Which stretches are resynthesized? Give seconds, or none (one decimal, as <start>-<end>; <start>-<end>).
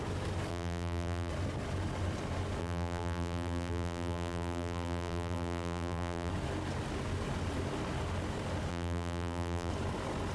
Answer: 0.5-1.3; 2.6-6.3; 8.7-9.7